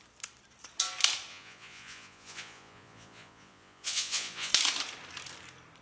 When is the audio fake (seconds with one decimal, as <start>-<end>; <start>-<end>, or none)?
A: 1.3-4.5